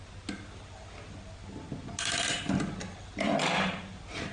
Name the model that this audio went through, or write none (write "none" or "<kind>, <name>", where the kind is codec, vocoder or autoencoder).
none